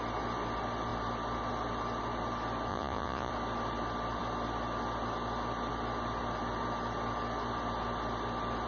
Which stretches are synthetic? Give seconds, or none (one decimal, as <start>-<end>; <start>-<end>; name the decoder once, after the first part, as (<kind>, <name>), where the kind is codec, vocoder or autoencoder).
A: 2.7-3.3 (vocoder, Vocos)